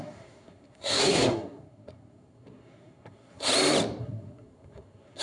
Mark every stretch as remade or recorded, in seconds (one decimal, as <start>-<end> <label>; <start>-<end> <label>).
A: 0.0-3.5 remade; 3.5-4.0 recorded; 4.0-5.2 remade